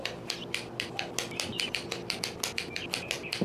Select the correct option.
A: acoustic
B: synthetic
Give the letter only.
A